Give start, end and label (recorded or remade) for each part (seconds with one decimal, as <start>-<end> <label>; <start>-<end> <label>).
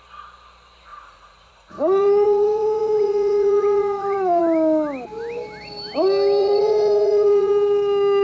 0.0-0.9 recorded; 0.9-4.4 remade; 4.4-6.4 recorded; 6.4-7.5 remade; 7.5-8.2 recorded